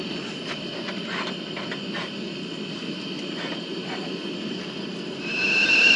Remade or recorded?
recorded